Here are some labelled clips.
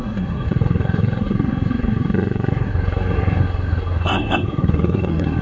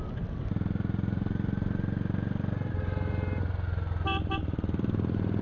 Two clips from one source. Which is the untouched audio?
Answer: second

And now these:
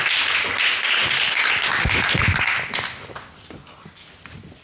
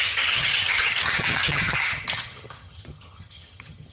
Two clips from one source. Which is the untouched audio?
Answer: first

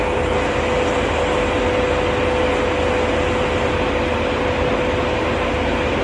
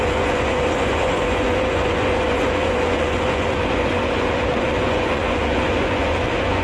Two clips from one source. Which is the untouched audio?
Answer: first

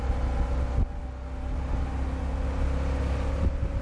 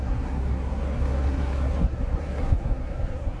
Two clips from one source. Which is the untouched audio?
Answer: first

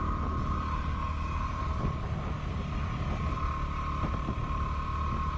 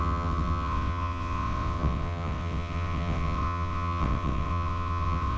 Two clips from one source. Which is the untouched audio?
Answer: first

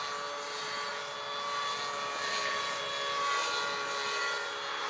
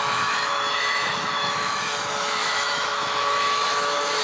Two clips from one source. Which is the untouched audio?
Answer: first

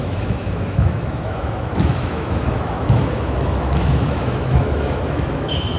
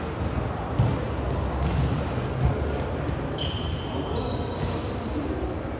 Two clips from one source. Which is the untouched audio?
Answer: second